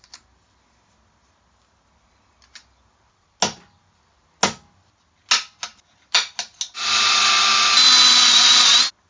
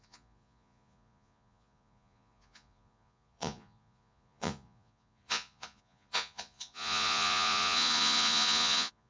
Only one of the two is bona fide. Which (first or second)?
first